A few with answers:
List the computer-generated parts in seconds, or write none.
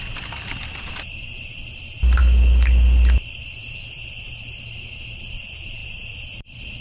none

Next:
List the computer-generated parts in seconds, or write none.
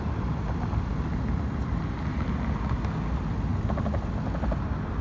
none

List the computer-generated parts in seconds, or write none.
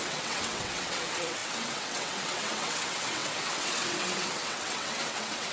0.0-5.5 (vocoder, WaveNeXt)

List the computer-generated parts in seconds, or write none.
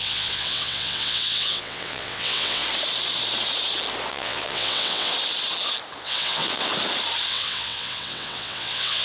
0.0-2.6 (vocoder, WaveNeXt); 4.1-5.1; 6.0-6.7; 7.3-9.0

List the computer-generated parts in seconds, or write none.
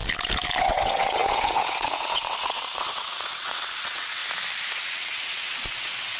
0.6-4.2 (vocoder, WaveNeXt); 4.7-6.2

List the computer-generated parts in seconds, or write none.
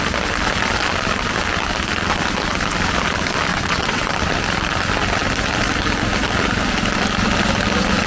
3.5-4.1 (vocoder, WaveNeXt)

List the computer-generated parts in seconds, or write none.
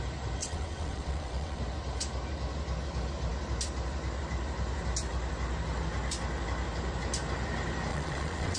0.4-1.6 (vocoder, WaveNeXt); 7.9-8.6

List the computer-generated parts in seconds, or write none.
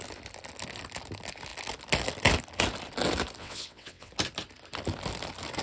3.4-4.1 (vocoder, WaveNeXt)